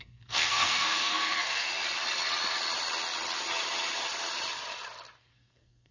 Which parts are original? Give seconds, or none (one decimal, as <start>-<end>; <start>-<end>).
1.7-5.2